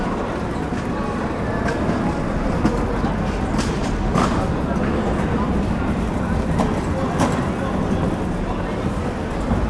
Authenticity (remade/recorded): recorded